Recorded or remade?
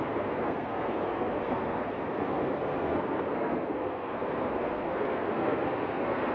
remade